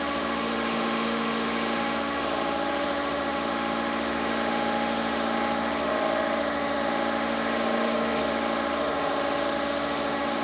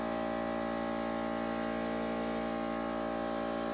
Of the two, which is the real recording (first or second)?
second